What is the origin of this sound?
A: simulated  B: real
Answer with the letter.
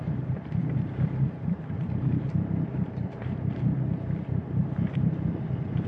A